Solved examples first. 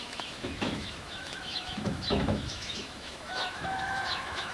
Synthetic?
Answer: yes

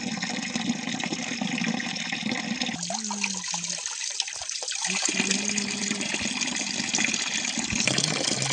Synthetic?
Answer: no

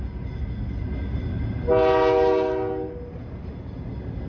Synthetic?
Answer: no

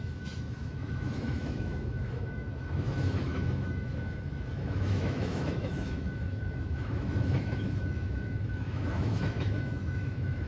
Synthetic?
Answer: yes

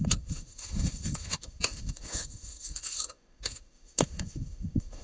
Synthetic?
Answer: yes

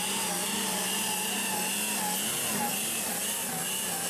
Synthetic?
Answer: no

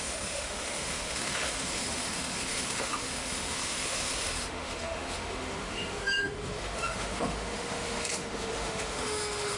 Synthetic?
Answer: yes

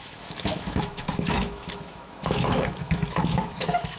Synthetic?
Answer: yes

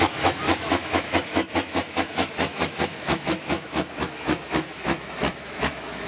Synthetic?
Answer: yes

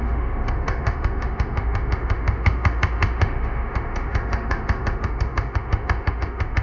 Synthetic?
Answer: yes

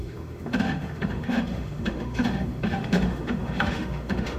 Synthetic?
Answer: yes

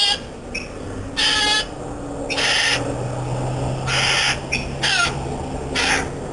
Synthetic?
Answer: no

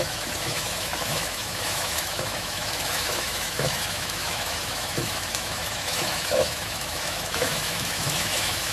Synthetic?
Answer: yes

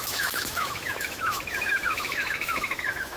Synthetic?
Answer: yes